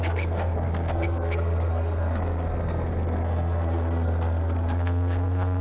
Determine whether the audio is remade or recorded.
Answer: remade